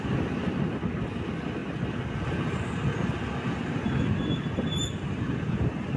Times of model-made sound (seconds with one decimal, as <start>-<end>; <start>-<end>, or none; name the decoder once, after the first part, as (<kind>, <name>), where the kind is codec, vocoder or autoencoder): none

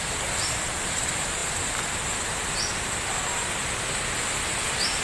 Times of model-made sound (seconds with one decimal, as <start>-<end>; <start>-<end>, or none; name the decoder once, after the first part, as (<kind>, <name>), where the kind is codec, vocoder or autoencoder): none

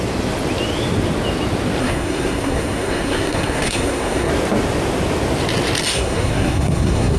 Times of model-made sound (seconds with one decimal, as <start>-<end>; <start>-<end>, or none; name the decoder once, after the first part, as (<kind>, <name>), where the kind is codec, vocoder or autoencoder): 1.8-4.3 (codec, SNAC); 5.9-7.2

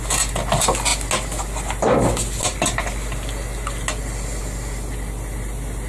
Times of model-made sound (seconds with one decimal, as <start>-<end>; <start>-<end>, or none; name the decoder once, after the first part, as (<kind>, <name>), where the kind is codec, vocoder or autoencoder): none